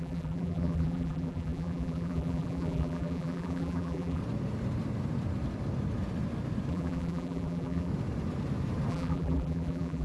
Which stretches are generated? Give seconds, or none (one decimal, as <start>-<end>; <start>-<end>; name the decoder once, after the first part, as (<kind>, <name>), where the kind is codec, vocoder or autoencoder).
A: 0.0-4.2 (vocoder, BigVGAN v2); 6.7-7.9; 8.9-10.0